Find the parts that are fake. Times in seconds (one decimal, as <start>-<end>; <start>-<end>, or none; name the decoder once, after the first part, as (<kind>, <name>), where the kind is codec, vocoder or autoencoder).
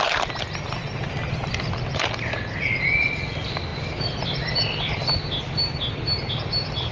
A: none